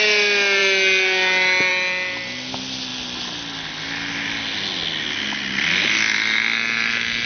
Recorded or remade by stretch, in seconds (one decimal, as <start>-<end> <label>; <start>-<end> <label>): 0.0-7.3 recorded